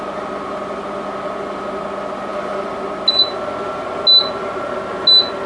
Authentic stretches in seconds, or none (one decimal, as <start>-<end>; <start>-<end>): 0.0-5.5